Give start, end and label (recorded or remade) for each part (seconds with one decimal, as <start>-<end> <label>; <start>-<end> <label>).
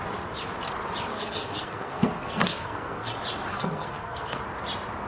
0.0-1.1 recorded; 1.1-3.1 remade; 3.1-3.5 recorded; 3.5-4.4 remade; 4.4-5.1 recorded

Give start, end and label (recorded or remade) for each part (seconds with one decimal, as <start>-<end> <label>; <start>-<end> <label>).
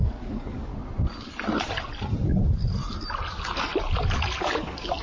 0.0-0.7 remade; 0.7-3.3 recorded; 3.3-3.7 remade; 3.7-4.6 recorded; 4.6-5.0 remade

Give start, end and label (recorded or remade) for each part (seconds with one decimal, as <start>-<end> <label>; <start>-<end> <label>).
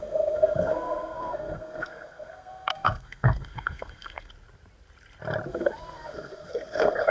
0.0-4.3 remade; 4.3-5.5 recorded; 5.5-7.1 remade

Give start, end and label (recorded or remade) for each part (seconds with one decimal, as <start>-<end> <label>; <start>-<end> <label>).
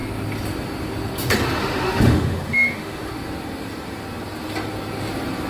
0.0-1.6 recorded; 1.6-3.1 remade; 3.1-5.5 recorded